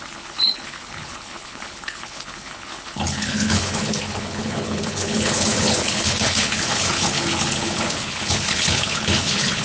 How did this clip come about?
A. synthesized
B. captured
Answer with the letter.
A